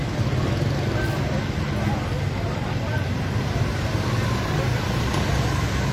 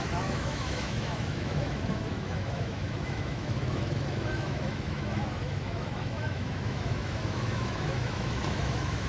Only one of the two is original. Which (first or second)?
first